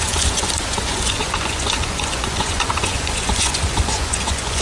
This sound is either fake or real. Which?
fake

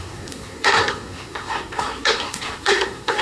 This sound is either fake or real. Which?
fake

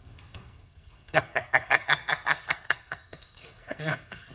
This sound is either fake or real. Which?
fake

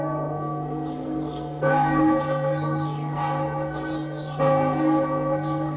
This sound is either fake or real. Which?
fake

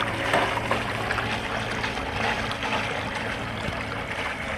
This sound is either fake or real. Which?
real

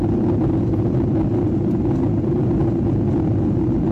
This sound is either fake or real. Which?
real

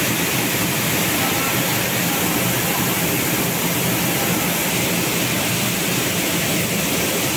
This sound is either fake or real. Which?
real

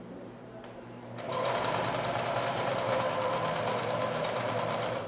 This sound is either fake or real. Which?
fake